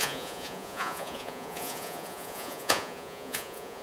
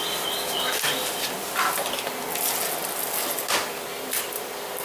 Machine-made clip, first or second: first